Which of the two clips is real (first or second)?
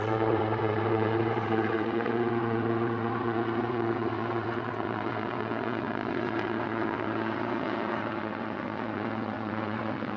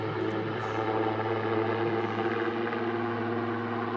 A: second